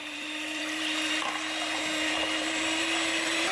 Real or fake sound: fake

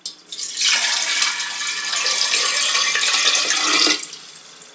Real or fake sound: real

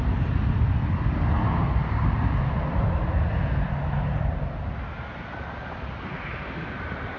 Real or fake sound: real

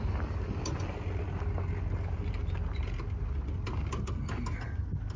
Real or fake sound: real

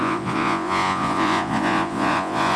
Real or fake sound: fake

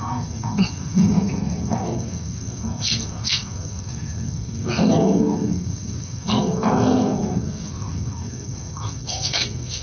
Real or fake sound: fake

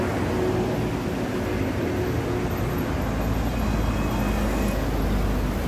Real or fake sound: real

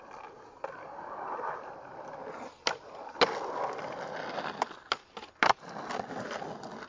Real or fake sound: real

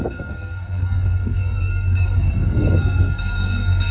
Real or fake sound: fake